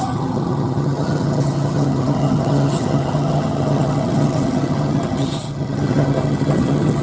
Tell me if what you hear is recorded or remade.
remade